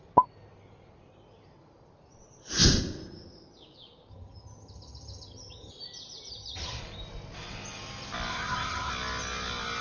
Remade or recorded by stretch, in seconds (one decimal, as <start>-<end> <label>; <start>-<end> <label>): 0.0-4.1 recorded; 4.1-5.7 remade; 5.7-6.3 recorded; 6.3-6.8 remade; 6.8-8.3 recorded; 8.3-8.9 remade; 8.9-9.8 recorded

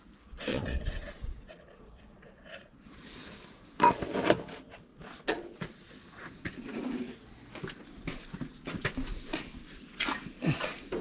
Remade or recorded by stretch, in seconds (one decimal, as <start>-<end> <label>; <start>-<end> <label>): 0.0-0.5 recorded; 0.5-2.9 remade; 2.9-4.9 recorded; 4.9-6.8 remade; 6.8-11.0 recorded

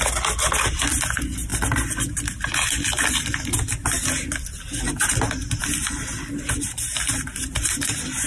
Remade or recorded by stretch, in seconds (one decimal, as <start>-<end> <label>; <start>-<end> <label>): 0.0-6.9 recorded; 6.9-7.9 remade; 7.9-8.3 recorded

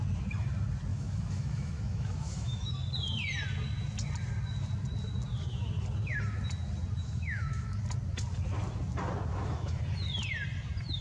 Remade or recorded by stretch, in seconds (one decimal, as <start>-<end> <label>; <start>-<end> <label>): 0.0-0.9 recorded; 0.9-2.7 remade; 2.7-7.0 recorded; 7.0-7.8 remade; 7.8-9.3 recorded; 9.3-9.8 remade; 9.8-11.0 recorded

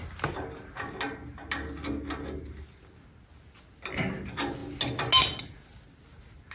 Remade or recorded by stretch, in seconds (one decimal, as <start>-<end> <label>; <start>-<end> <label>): 0.0-6.5 recorded